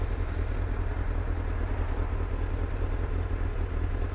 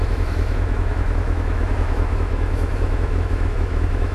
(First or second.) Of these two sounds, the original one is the first